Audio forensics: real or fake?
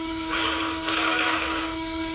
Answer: fake